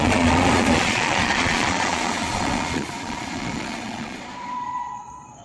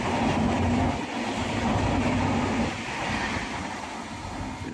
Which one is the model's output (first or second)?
first